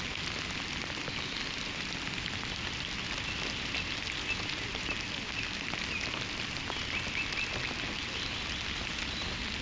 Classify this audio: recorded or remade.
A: recorded